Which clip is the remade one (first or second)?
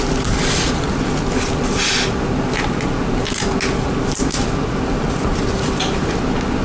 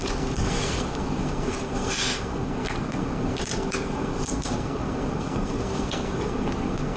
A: second